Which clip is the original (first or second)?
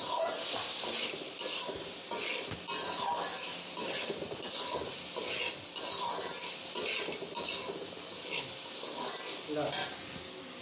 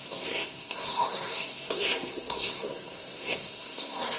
first